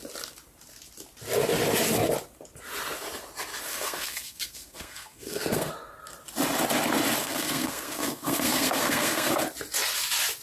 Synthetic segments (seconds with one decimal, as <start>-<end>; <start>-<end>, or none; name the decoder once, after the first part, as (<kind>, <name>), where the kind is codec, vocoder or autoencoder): 3.7-5.7 (codec, SNAC); 7.2-9.3